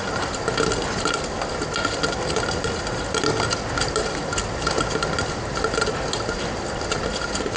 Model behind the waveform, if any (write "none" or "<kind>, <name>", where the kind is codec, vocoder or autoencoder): none